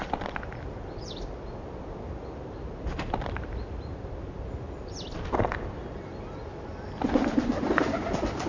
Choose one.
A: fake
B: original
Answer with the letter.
A